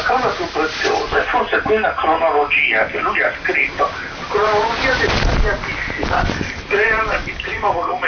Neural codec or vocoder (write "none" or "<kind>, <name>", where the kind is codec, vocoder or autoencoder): none